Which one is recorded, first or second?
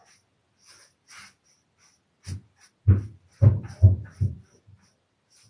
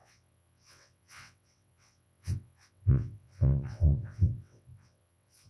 first